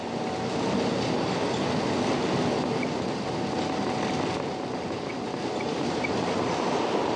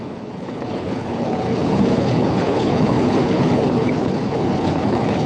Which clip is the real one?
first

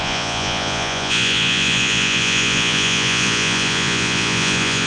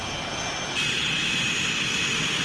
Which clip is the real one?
second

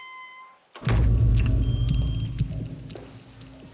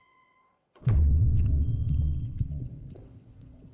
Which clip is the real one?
first